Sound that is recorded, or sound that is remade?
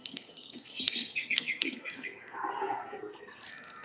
remade